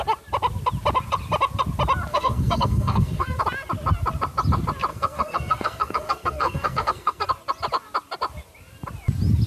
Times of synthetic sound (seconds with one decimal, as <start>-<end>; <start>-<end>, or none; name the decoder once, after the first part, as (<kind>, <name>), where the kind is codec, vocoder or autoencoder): 2.1-3.4 (codec, SNAC); 4.9-7.3